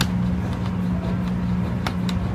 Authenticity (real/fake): real